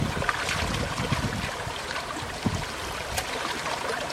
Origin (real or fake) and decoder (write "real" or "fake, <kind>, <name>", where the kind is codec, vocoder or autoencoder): real